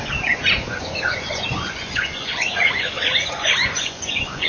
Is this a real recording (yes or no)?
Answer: no